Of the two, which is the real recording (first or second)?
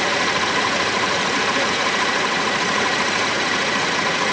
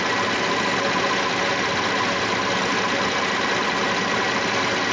second